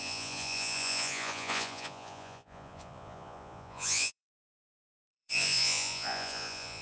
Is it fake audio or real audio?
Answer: fake